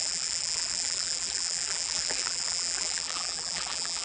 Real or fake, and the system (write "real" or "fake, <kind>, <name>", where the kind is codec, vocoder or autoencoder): fake, vocoder, BigVGAN v2